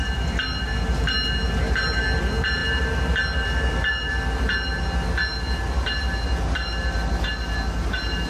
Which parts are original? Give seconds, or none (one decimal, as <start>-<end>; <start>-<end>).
0.0-8.3